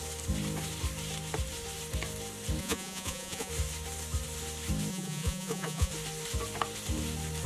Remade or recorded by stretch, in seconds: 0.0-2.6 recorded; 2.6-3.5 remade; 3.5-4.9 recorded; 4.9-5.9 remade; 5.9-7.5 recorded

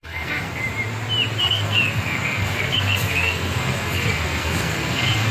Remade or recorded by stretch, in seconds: 0.0-0.6 remade; 0.6-1.4 recorded; 1.4-5.3 remade

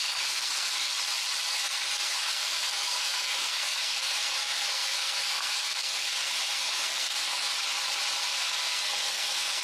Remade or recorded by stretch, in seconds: 0.0-0.9 remade; 0.9-1.5 recorded; 1.5-7.5 remade; 7.5-8.2 recorded; 8.2-9.6 remade

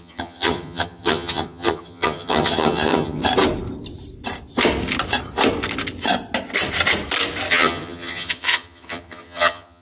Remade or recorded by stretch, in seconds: 0.0-3.2 remade; 3.2-7.5 recorded; 7.5-9.8 remade

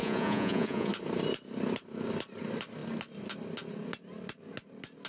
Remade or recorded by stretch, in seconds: 0.0-0.9 remade; 0.9-5.1 recorded

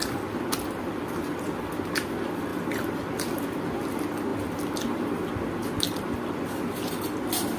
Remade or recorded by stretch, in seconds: 0.0-7.6 recorded

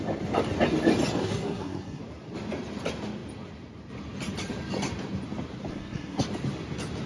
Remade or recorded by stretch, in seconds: 0.0-1.2 recorded; 1.2-2.0 remade; 2.0-5.7 recorded; 5.7-6.2 remade; 6.2-7.1 recorded

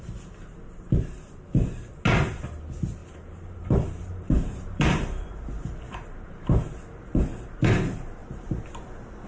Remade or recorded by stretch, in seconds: 0.0-3.0 recorded; 3.0-6.7 remade; 6.7-8.2 recorded; 8.2-8.7 remade; 8.7-9.3 recorded